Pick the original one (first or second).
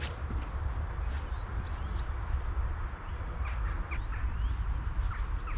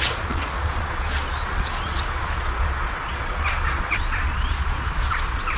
first